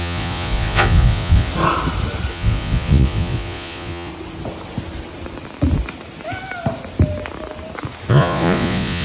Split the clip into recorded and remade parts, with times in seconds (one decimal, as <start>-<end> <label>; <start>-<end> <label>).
0.0-1.5 remade; 1.5-2.3 recorded; 2.3-4.1 remade; 4.1-8.1 recorded; 8.1-9.0 remade